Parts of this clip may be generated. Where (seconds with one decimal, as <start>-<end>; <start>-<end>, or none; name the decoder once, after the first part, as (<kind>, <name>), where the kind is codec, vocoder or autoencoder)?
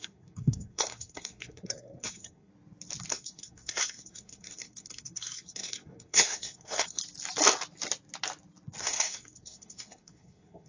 0.0-2.5 (codec, SNAC); 3.1-7.0; 8.8-10.7